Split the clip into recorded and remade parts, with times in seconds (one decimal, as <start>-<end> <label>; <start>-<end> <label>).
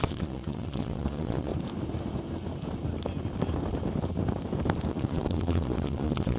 0.0-1.5 remade; 1.5-4.9 recorded; 4.9-6.4 remade